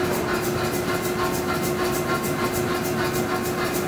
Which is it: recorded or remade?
recorded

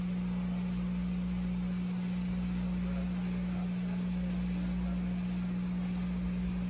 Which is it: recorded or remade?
recorded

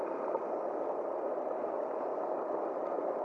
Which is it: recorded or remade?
recorded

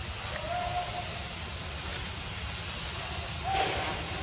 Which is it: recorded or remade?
recorded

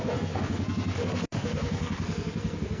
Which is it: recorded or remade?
remade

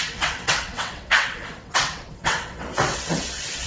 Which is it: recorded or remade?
remade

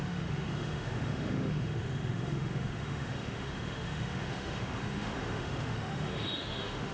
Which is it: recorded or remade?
remade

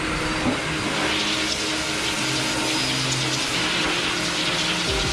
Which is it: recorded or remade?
recorded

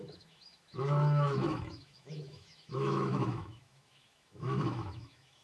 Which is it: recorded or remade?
remade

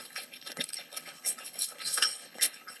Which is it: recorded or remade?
remade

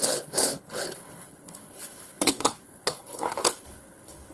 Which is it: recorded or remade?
remade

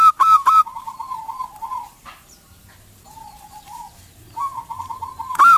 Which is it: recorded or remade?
remade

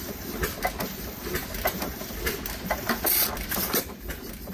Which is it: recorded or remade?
recorded